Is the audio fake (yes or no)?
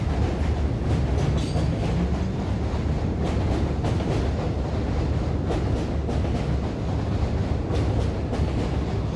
no